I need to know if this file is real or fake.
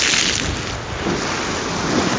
real